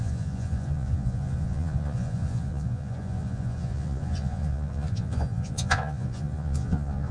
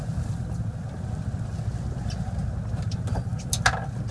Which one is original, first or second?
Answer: second